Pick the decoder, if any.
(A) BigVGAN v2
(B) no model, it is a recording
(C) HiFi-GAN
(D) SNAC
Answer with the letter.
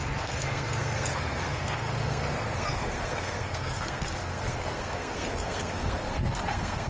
D